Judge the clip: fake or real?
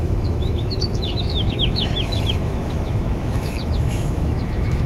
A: fake